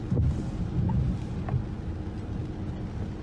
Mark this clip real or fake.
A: real